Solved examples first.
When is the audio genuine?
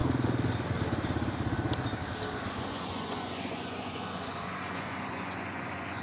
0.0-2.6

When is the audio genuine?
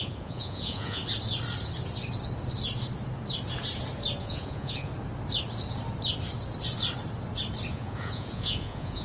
1.0-4.2; 4.9-7.7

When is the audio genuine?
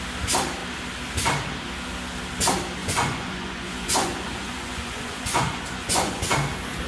0.0-2.8; 6.2-6.9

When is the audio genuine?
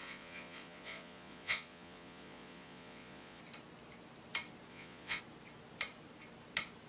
3.4-4.7; 5.2-6.9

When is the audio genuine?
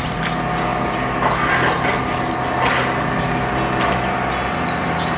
0.0-5.2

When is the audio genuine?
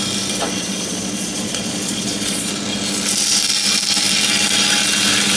0.0-0.4; 2.5-5.4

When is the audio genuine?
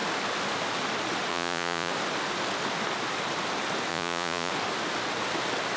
0.0-1.3; 1.9-3.9; 4.5-5.8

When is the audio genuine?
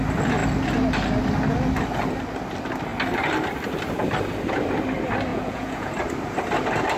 0.0-5.3; 5.9-7.0